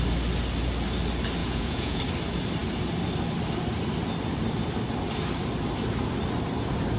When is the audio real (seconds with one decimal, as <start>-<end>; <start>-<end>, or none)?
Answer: 0.0-1.4; 2.0-7.0